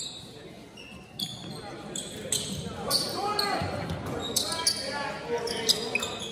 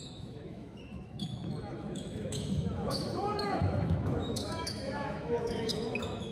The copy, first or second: second